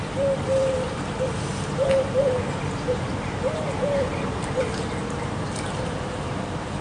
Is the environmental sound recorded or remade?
remade